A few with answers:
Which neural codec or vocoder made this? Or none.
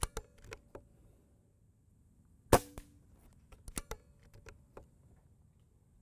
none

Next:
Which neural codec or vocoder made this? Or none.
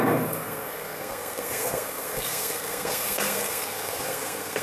codec, SNAC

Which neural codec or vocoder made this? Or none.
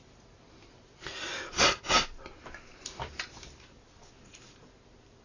none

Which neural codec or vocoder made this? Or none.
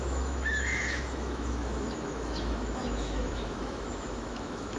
autoencoder, DAC-VAE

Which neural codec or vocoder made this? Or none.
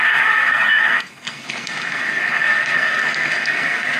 codec, SNAC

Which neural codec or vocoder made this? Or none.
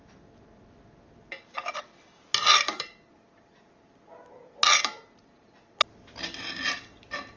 none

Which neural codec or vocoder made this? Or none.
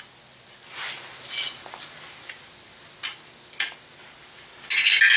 none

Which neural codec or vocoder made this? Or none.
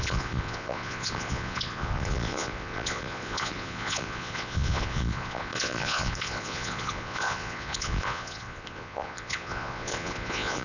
vocoder, Vocos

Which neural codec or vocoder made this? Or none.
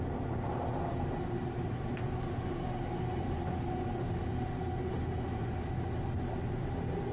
none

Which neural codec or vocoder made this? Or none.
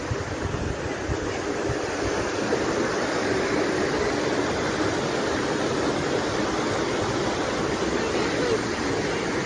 none